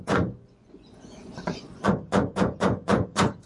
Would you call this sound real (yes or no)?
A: no